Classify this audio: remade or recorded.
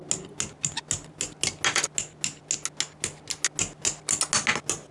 recorded